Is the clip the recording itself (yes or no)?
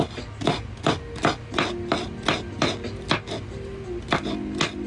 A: yes